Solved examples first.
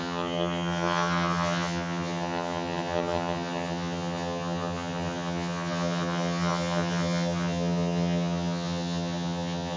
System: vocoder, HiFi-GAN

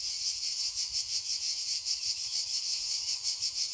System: autoencoder, DAC-VAE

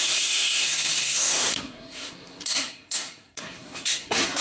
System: codec, SNAC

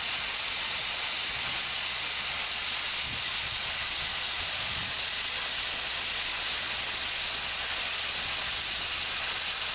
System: vocoder, Vocos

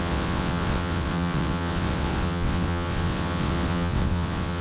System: vocoder, WaveNeXt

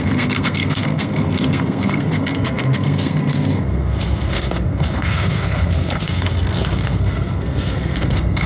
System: codec, SNAC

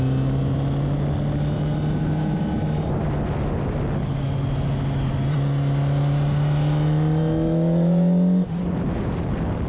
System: none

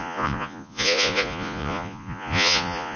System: vocoder, Vocos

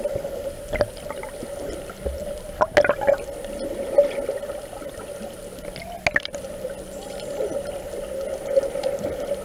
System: none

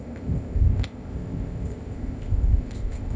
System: codec, ZipCodec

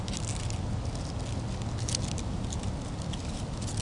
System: none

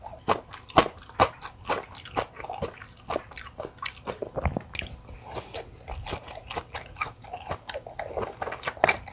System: none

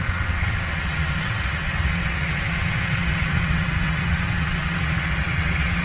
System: vocoder, WaveNeXt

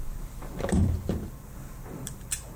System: vocoder, BigVGAN v2